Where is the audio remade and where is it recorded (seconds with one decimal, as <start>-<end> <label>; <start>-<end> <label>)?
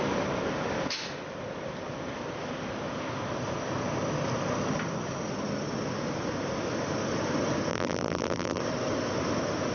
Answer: 0.0-7.7 recorded; 7.7-8.6 remade; 8.6-9.7 recorded